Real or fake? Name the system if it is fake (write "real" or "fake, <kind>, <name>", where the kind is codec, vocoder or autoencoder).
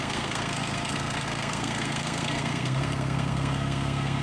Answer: fake, codec, SNAC